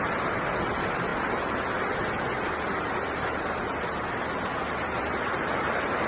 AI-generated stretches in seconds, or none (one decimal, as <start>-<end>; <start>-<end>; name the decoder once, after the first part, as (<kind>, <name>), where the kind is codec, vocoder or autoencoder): none